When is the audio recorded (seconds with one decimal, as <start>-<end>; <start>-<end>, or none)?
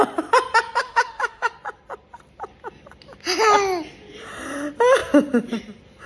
0.0-0.8; 1.5-6.1